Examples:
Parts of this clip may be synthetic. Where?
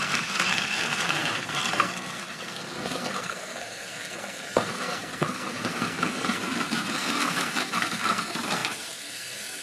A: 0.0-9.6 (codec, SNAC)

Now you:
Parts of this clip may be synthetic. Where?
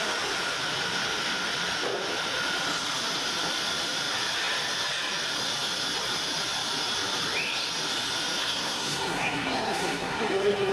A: 8.4-10.7 (codec, SNAC)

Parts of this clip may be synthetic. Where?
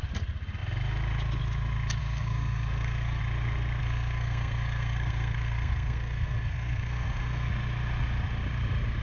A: 2.0-3.2 (codec, SNAC); 3.8-7.5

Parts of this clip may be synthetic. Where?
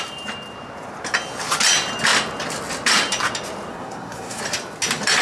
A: 3.7-4.4 (codec, SNAC)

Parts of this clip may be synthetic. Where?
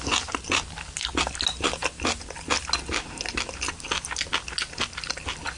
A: none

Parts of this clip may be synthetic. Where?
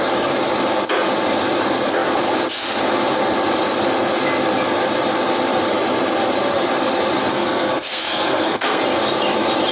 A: 7.3-8.8 (codec, SNAC)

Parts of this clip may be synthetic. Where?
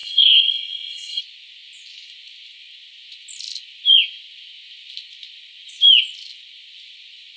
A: 0.0-1.2 (codec, SNAC)